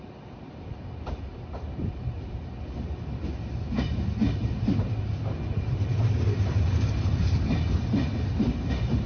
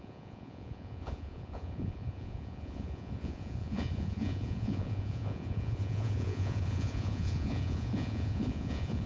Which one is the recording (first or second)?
first